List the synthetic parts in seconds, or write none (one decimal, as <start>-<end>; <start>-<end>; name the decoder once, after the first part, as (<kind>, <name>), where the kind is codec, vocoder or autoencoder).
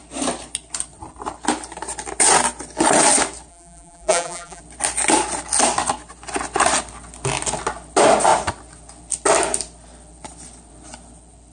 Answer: 3.5-4.6 (vocoder, BigVGAN v2)